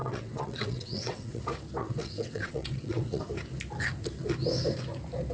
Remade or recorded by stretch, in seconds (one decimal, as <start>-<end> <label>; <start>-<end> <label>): 0.0-1.4 remade; 1.4-1.8 recorded; 1.8-3.2 remade; 3.2-5.3 recorded

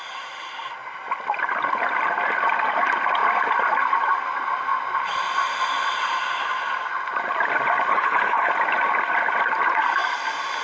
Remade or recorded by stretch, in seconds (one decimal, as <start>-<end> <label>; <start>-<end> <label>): 0.0-7.9 recorded; 7.9-8.5 remade; 8.5-10.6 recorded

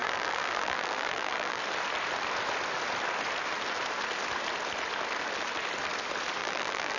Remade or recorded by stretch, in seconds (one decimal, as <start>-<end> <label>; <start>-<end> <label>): 0.0-1.6 remade; 1.6-6.4 recorded; 6.4-7.0 remade